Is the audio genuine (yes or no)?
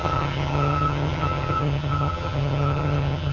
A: no